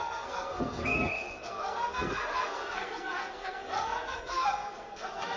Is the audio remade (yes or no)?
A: yes